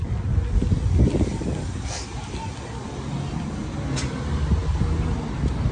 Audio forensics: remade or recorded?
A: recorded